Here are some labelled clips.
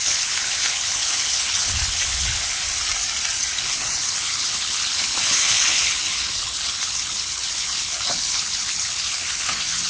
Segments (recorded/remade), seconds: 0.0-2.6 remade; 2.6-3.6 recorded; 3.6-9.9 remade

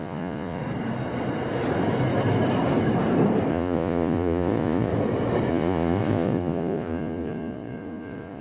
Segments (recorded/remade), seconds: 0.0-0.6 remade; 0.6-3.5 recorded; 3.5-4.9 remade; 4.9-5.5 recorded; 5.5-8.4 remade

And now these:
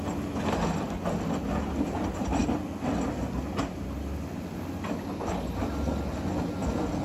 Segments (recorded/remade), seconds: 0.0-7.0 recorded

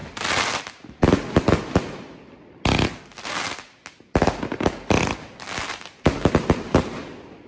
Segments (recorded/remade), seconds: 0.0-7.5 recorded